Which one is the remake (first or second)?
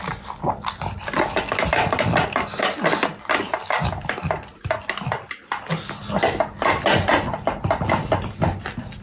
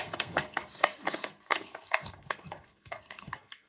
second